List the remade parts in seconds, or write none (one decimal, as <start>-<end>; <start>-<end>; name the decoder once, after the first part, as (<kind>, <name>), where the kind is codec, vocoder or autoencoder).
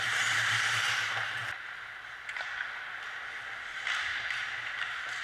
none